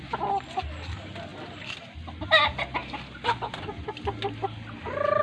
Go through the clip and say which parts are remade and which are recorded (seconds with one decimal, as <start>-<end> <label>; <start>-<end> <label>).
0.0-1.3 recorded; 1.3-1.8 remade; 1.8-2.8 recorded; 2.8-3.5 remade; 3.5-5.2 recorded